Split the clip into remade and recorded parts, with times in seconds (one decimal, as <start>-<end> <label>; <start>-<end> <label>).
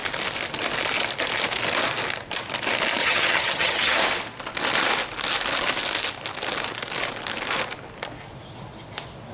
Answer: 0.0-3.0 recorded; 3.0-4.0 remade; 4.0-9.3 recorded